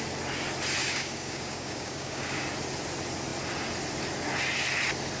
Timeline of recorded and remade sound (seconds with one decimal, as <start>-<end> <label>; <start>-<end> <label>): 0.0-0.8 recorded; 0.8-2.4 remade; 2.4-5.2 recorded